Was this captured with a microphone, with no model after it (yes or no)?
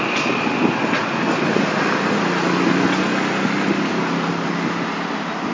yes